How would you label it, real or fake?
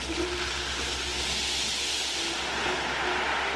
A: real